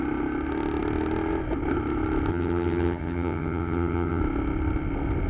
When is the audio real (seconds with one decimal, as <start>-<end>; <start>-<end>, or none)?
0.0-2.3; 4.2-5.3